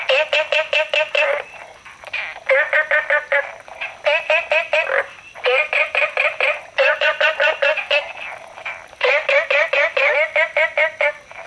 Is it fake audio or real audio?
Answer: real